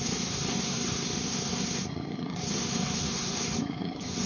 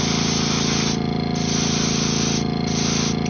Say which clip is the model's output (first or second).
first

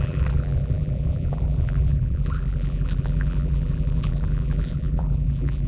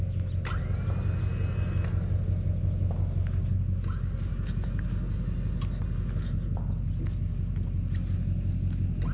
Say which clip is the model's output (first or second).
first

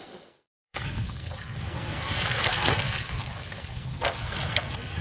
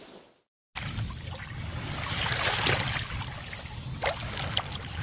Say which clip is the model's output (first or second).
first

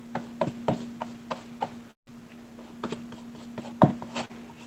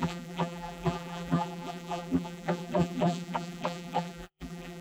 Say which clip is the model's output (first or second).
second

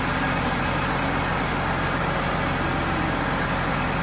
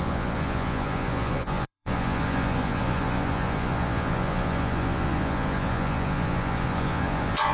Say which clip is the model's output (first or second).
second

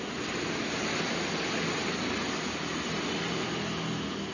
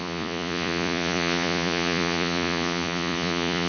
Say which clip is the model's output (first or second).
second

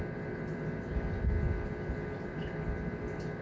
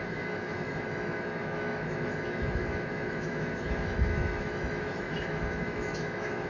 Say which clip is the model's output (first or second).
second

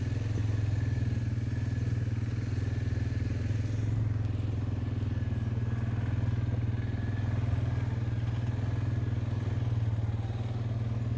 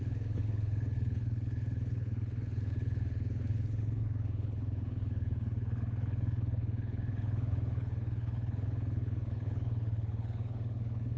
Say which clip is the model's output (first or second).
second